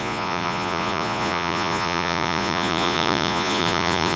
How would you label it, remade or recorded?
remade